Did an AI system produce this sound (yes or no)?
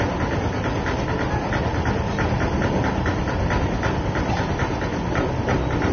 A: no